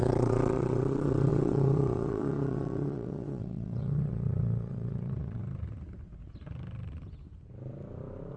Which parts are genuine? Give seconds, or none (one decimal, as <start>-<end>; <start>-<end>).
5.4-8.4